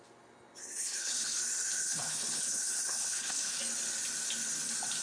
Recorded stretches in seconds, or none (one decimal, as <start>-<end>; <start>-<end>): 0.0-0.6; 1.4-1.8; 3.6-5.0